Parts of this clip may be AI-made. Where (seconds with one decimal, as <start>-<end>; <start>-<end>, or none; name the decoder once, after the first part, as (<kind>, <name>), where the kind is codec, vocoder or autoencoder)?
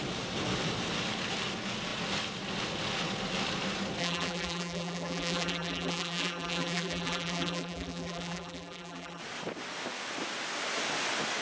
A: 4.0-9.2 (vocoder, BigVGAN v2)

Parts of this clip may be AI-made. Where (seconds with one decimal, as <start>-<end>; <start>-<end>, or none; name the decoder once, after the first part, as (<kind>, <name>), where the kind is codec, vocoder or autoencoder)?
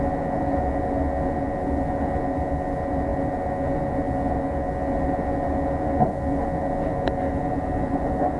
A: none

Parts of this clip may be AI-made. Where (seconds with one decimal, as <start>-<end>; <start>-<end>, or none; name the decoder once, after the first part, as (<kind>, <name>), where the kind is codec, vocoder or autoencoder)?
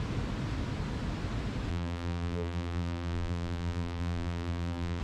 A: 1.7-5.0 (vocoder, BigVGAN v2)